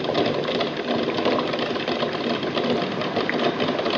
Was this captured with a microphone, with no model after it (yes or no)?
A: yes